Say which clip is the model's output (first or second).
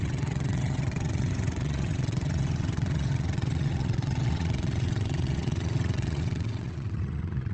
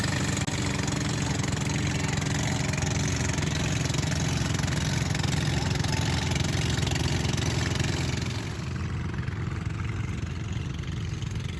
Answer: first